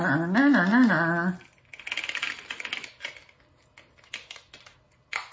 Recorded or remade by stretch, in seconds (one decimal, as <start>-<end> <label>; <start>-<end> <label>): 0.0-5.3 recorded